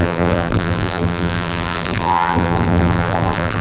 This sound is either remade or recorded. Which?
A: remade